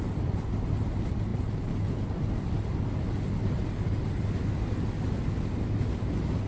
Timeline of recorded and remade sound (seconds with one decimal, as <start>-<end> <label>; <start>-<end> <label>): 0.0-6.5 recorded